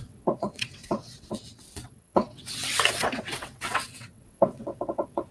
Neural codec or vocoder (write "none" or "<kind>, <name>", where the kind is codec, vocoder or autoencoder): vocoder, WaveNeXt